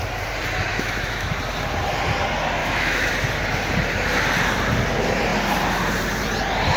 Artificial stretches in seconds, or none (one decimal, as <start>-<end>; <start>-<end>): 0.7-1.4; 2.6-3.1